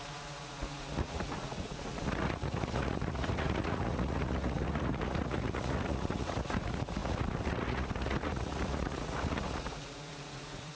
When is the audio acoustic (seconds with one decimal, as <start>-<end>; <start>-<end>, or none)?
none